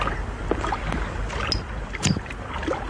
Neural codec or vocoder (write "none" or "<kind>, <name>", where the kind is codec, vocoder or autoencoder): none